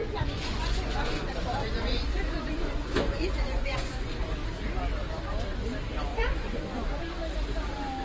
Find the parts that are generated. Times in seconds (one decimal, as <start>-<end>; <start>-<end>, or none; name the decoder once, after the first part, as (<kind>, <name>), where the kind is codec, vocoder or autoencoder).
0.0-4.2 (vocoder, Vocos); 6.1-7.0